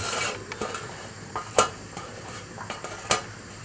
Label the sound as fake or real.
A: fake